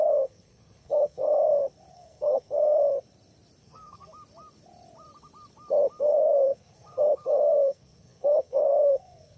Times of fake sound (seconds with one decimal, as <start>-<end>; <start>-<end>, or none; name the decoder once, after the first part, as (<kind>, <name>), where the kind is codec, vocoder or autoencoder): 0.0-1.4 (codec, SNAC); 1.9-2.8; 3.6-4.1; 6.0-9.4